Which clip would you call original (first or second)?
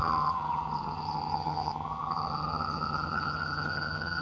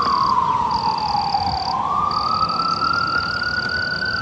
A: second